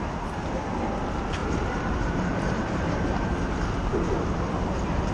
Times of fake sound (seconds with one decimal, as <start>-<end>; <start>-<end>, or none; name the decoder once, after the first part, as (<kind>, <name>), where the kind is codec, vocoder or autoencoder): 1.4-2.9 (vocoder, BigVGAN v2)